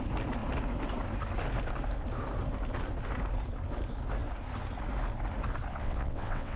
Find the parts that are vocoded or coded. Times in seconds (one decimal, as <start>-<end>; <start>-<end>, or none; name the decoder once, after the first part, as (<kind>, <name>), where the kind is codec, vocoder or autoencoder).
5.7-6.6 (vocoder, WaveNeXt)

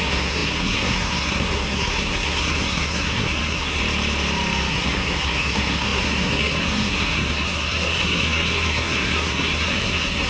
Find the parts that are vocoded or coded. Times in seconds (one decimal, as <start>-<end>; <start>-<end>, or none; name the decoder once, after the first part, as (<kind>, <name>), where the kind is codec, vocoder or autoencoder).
0.0-3.8 (codec, SNAC); 4.7-10.3

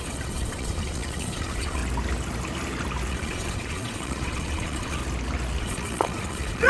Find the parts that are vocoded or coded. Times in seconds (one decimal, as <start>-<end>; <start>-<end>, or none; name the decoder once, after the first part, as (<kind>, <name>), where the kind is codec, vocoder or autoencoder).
0.0-1.8 (vocoder, Vocos); 3.1-5.0; 5.6-6.7

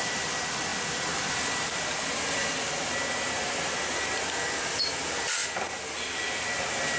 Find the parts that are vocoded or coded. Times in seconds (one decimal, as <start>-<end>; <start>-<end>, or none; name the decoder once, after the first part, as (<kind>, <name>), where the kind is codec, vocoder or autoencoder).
0.0-5.4 (vocoder, BigVGAN v2)